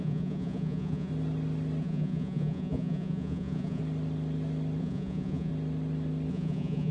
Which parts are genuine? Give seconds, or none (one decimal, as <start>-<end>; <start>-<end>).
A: 1.1-1.8; 3.8-4.8; 5.5-6.3